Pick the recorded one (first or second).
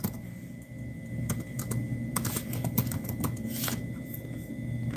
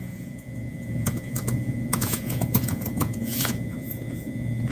first